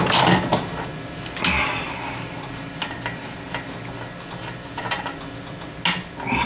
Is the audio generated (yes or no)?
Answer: no